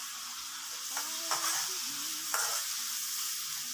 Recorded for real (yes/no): yes